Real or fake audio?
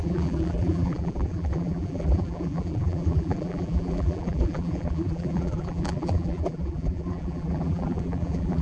fake